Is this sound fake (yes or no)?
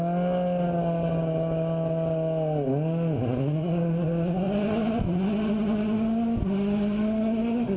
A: no